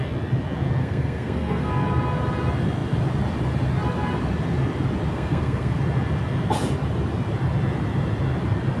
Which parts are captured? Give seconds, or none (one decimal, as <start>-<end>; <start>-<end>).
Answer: 0.0-0.8; 1.7-5.1; 5.8-8.8